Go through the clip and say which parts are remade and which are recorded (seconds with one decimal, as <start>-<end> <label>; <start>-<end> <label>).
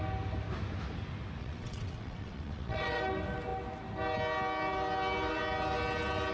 0.0-1.4 recorded; 1.4-3.0 remade; 3.0-6.3 recorded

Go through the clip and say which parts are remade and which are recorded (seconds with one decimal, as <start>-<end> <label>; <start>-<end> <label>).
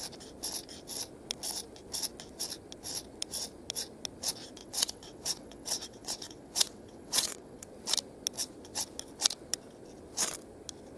0.0-4.6 recorded; 4.6-7.6 remade; 7.6-11.0 recorded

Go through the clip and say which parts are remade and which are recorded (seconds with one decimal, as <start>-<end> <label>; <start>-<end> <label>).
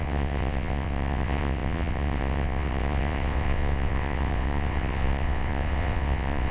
0.0-6.5 remade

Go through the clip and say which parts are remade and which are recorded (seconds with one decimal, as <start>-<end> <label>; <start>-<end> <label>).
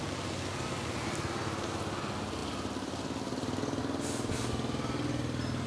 0.0-5.7 recorded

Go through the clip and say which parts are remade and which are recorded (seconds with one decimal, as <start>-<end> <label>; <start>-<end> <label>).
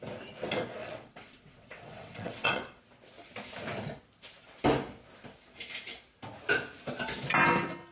0.0-0.8 recorded; 0.8-2.8 remade; 2.8-7.9 recorded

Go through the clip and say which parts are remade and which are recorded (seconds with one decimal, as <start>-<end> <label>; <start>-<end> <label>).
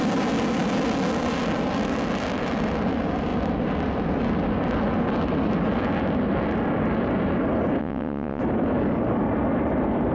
0.0-7.8 recorded; 7.8-8.4 remade; 8.4-10.1 recorded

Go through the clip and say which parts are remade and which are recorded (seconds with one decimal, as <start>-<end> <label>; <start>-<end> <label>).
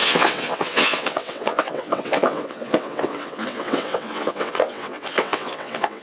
0.0-6.0 remade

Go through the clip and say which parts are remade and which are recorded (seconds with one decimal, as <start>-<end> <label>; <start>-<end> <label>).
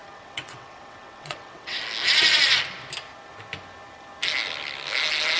0.0-1.8 remade; 1.8-5.4 recorded